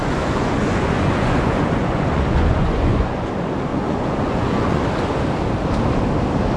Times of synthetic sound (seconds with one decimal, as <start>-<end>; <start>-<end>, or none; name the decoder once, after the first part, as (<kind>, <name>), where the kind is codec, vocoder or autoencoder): 0.0-3.3 (vocoder, Vocos); 3.7-4.8